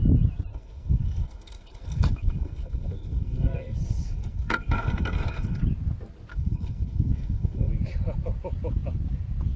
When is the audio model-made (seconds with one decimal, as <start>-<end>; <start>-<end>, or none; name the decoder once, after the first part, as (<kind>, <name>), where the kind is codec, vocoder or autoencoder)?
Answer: 0.5-5.6 (codec, SNAC); 6.3-7.7